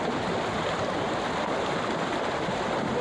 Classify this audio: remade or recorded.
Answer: recorded